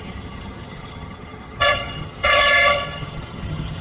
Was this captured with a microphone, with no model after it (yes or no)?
no